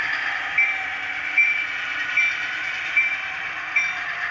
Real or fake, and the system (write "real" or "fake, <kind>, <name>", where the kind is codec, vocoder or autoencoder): fake, vocoder, BigVGAN v2